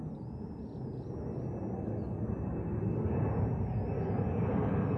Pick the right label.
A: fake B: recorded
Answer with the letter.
B